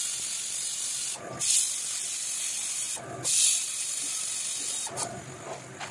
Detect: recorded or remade recorded